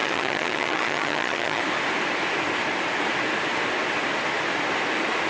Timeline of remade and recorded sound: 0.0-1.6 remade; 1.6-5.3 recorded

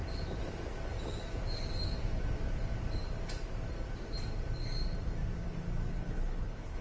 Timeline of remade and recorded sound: 0.0-5.9 recorded; 5.9-6.8 remade

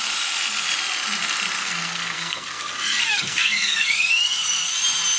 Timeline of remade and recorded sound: 0.0-1.6 recorded; 1.6-4.7 remade; 4.7-5.2 recorded

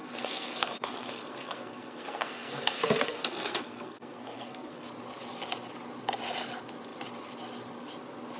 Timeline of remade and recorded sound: 0.0-4.9 remade; 4.9-8.4 recorded

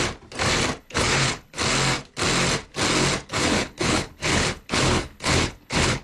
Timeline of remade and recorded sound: 0.0-0.8 recorded; 0.8-1.6 remade; 1.6-3.3 recorded; 3.3-6.0 remade

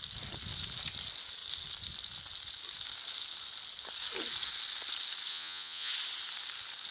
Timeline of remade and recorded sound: 0.0-5.3 recorded; 5.3-5.9 remade; 5.9-6.9 recorded

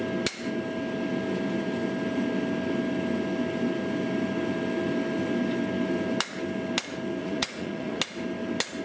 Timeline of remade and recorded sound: 0.0-7.2 recorded; 7.2-8.0 remade; 8.0-8.8 recorded